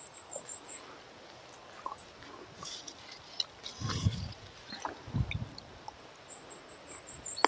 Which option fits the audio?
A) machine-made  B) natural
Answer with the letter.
B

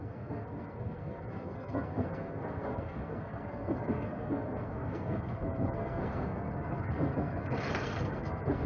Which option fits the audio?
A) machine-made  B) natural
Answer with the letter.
A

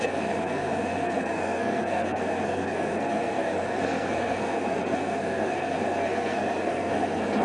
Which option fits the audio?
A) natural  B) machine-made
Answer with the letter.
B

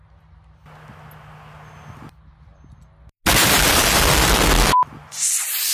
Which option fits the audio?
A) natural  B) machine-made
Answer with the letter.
A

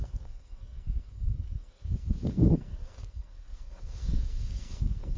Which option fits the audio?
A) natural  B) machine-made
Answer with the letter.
B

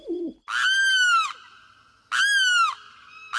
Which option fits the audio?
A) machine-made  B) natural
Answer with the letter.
B